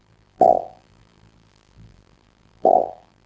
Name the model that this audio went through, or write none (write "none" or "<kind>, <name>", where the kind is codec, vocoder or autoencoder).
vocoder, BigVGAN v2